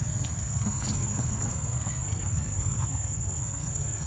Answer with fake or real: fake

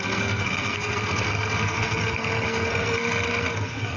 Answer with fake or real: fake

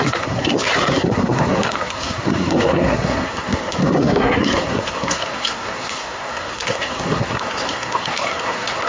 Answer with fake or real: fake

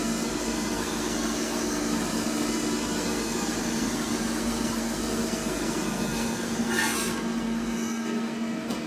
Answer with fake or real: fake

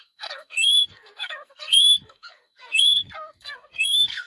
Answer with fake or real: fake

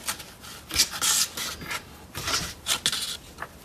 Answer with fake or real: real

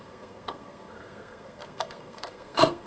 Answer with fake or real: fake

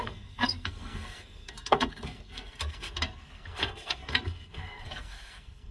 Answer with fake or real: fake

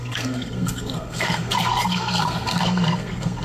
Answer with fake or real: fake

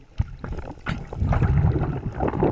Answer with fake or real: real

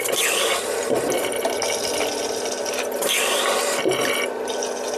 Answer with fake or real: real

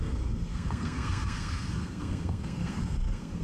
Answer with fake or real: fake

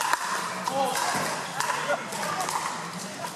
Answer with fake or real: real